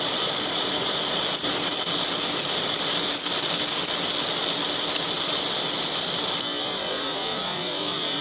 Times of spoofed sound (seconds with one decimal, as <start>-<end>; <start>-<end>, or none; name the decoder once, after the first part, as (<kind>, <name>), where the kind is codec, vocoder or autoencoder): 0.0-1.7 (vocoder, Vocos); 6.6-8.2